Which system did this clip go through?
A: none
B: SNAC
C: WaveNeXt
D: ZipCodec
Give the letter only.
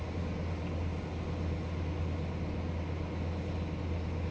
A